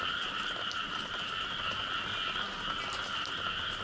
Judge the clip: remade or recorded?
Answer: recorded